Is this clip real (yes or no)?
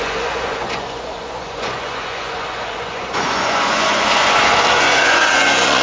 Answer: no